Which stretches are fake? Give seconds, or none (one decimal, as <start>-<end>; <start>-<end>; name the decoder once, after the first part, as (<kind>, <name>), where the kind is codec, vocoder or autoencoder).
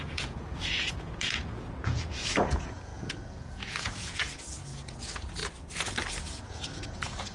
0.0-5.4 (vocoder, Vocos); 6.1-7.3